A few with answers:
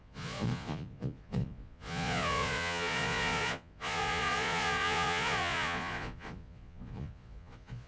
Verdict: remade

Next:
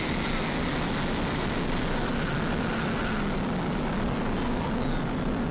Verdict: recorded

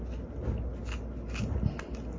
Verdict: recorded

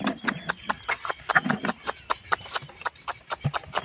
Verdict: recorded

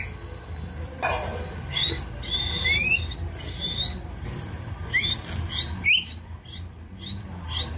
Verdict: recorded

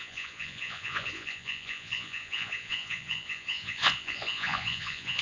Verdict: remade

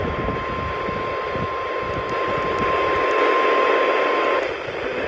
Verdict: recorded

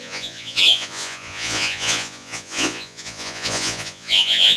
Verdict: remade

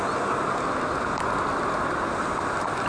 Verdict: recorded